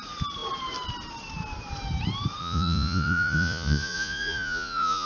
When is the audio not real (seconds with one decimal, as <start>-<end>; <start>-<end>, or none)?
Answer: 2.4-5.1